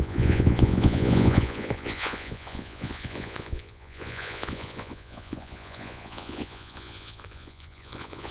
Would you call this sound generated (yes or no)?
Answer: yes